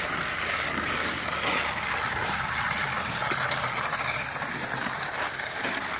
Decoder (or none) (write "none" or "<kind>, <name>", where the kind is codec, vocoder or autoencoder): none